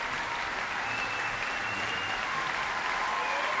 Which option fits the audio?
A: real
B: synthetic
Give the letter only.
A